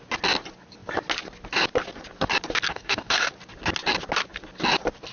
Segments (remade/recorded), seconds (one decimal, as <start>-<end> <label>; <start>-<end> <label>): 0.0-2.7 recorded; 2.7-3.3 remade; 3.3-5.1 recorded

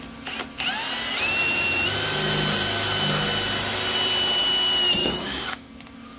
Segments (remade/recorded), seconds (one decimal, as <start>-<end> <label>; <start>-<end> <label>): 0.0-5.0 recorded; 5.0-5.7 remade; 5.7-6.2 recorded

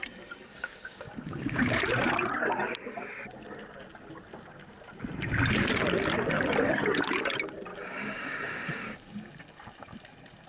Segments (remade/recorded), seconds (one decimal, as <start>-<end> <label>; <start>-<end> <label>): 0.0-0.5 recorded; 0.5-1.8 remade; 1.8-7.7 recorded; 7.7-9.3 remade; 9.3-10.5 recorded

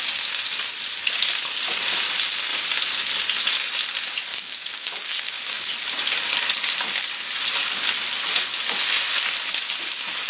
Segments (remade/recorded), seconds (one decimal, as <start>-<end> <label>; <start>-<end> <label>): 0.0-4.3 recorded; 4.3-5.7 remade; 5.7-10.3 recorded